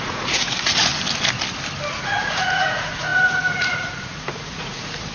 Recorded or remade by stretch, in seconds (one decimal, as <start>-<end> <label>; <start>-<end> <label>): 0.0-0.9 remade; 0.9-1.9 recorded; 1.9-5.1 remade